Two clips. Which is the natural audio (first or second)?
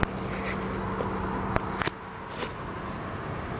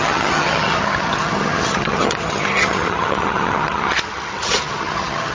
first